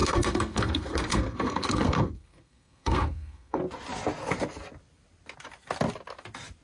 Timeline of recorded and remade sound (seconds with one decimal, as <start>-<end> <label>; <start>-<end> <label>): 0.0-3.6 remade; 3.6-6.6 recorded